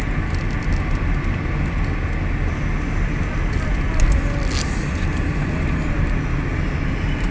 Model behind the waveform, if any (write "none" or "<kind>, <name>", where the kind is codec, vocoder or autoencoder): none